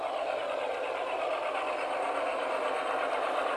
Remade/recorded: recorded